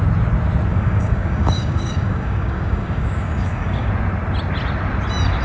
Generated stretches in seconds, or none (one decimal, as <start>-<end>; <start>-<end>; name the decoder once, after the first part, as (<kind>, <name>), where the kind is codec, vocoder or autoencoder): 0.7-3.9 (codec, DAC)